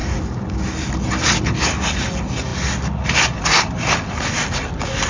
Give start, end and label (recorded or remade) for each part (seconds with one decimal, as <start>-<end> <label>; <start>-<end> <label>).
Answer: 0.0-5.1 recorded